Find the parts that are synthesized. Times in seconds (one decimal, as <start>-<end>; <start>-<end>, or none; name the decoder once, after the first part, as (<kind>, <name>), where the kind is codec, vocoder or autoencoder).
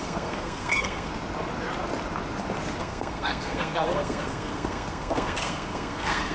0.0-1.1 (codec, SNAC); 2.8-6.3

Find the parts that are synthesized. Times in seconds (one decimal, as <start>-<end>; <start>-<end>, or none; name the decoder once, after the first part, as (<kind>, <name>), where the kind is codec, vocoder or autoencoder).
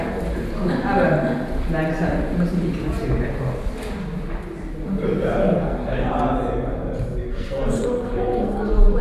5.4-6.1 (codec, SNAC); 7.2-9.0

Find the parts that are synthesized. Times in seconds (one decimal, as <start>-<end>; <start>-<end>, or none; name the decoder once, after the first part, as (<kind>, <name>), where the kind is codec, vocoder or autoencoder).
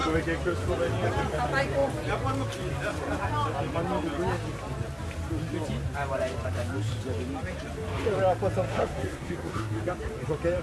8.7-9.8 (codec, SNAC)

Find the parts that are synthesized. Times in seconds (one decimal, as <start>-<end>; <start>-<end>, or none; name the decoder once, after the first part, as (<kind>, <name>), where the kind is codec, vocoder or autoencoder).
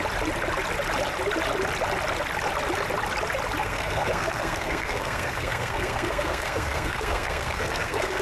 3.6-8.2 (codec, SNAC)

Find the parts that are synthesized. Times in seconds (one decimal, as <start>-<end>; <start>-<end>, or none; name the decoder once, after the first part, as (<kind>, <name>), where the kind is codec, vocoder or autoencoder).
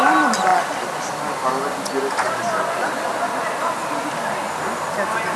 none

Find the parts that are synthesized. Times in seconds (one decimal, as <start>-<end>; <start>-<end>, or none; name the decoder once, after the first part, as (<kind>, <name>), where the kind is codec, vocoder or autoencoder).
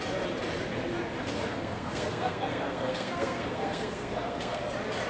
1.5-4.6 (codec, SNAC)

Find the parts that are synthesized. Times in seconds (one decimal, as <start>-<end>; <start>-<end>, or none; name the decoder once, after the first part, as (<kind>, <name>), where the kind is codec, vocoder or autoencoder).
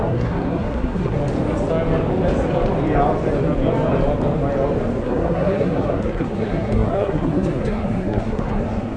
0.0-1.2 (codec, SNAC); 5.0-9.0